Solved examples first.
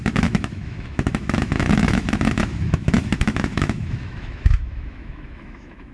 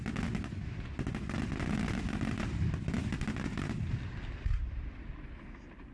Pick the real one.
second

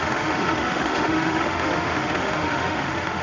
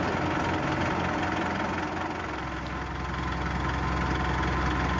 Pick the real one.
second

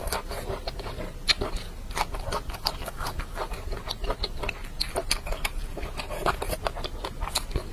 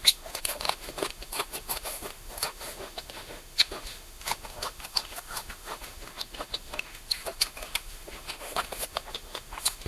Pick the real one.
first